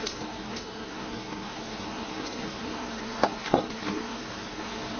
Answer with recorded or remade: remade